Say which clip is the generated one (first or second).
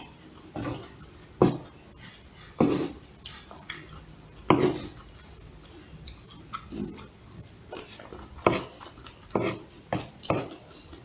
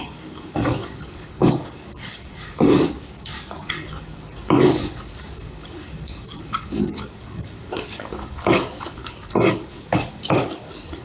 second